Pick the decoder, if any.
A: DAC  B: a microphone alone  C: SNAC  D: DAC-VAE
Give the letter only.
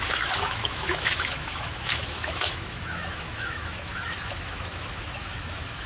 D